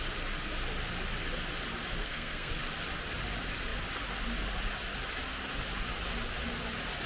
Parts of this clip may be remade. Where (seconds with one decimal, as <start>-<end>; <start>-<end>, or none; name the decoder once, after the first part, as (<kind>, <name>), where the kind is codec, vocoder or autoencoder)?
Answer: 2.0-2.5 (codec, SNAC)